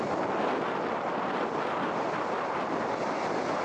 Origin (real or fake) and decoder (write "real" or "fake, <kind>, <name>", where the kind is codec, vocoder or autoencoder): real